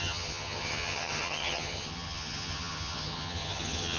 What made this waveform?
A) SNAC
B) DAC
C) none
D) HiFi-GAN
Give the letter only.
D